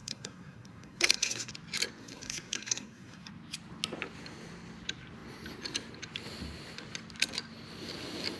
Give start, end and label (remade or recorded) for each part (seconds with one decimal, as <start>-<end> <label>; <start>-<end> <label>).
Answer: 0.0-1.5 remade; 1.5-2.0 recorded; 2.0-3.3 remade; 3.3-8.4 recorded